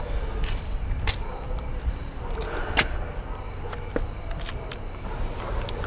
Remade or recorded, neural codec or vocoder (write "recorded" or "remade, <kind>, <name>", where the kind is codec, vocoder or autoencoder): recorded